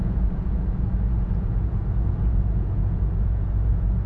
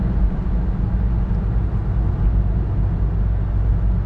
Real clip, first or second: second